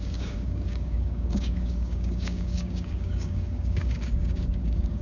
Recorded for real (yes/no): no